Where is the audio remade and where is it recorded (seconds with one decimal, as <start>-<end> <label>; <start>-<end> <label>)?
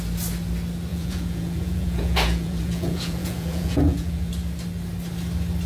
0.0-0.9 recorded; 0.9-4.3 remade; 4.3-5.7 recorded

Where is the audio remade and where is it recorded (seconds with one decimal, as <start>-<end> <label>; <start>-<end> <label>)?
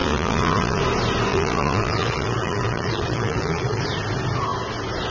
0.0-0.8 remade; 0.8-1.3 recorded; 1.3-3.8 remade; 3.8-5.1 recorded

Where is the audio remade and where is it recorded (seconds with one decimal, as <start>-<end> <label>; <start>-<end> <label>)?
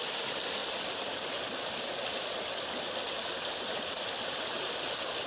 0.0-5.3 recorded